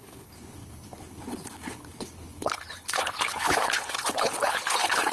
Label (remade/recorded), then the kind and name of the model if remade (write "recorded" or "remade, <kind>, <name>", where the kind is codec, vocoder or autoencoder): remade, codec, HILCodec